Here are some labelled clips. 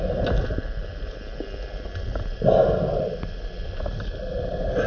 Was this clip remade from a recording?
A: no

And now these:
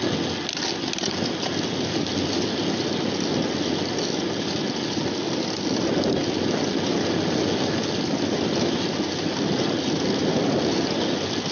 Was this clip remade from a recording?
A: no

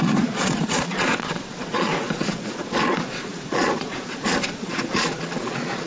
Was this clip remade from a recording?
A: yes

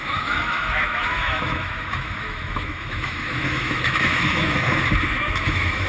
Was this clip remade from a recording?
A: yes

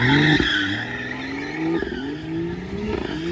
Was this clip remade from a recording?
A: no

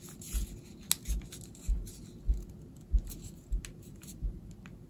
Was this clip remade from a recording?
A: no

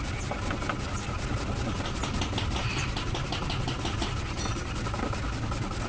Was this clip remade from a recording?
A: no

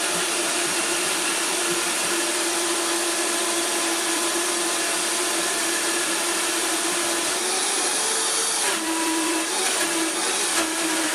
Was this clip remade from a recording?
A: yes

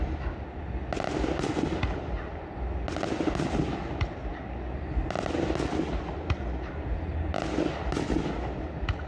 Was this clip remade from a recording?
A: no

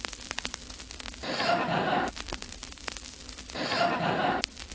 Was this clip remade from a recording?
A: no